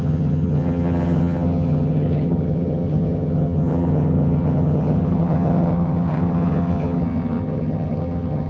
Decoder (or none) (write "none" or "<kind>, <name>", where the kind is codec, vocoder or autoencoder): vocoder, HiFi-GAN